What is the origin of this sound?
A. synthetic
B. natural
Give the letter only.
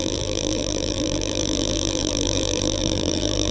A